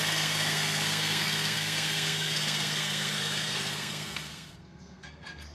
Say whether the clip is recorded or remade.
remade